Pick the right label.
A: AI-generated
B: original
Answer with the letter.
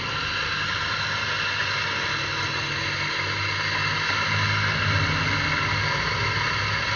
B